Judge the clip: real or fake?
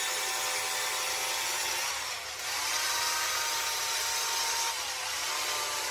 real